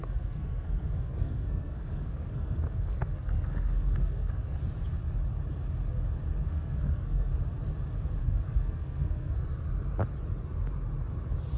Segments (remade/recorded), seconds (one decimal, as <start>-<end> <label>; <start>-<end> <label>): 0.0-4.6 remade; 4.6-6.4 recorded; 6.4-7.3 remade; 7.3-8.2 recorded; 8.2-9.5 remade; 9.5-11.6 recorded